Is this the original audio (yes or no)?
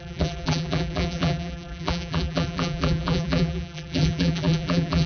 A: no